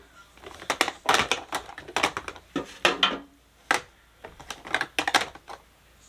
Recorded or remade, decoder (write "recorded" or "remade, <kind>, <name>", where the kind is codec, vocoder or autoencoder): recorded